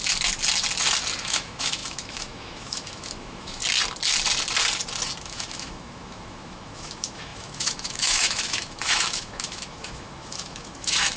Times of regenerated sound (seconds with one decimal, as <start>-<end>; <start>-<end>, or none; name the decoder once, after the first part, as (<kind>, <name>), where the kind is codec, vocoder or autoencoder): 1.2-3.6 (autoencoder, DAC-VAE); 5.2-11.2